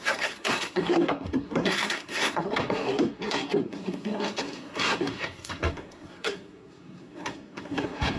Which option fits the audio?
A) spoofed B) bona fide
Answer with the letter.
A